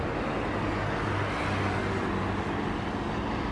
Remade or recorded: recorded